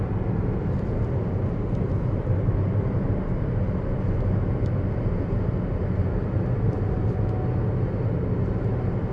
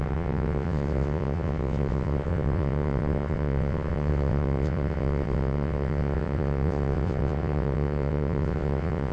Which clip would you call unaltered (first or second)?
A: first